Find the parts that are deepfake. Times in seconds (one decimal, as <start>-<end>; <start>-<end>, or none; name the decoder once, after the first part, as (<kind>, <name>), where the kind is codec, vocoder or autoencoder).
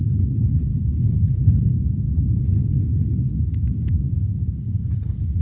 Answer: 0.0-1.7 (codec, HILCodec); 2.4-3.3; 4.6-5.4